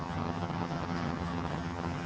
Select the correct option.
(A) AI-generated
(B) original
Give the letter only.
A